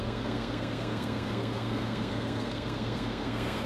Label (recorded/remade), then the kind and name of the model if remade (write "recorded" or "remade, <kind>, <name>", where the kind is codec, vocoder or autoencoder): remade, codec, SNAC